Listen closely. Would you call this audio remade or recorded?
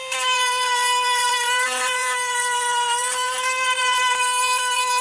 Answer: remade